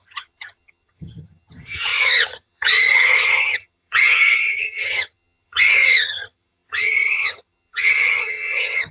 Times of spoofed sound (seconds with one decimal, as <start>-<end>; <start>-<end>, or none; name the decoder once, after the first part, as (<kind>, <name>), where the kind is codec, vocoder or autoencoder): 0.0-8.9 (vocoder, HiFi-GAN)